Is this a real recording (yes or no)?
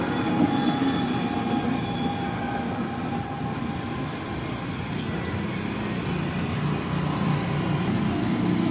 yes